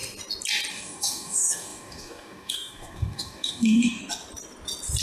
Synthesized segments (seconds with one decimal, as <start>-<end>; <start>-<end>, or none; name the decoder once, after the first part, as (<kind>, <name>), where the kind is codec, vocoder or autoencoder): 0.7-4.0 (codec, DAC)